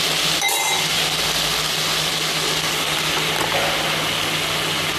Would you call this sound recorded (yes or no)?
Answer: yes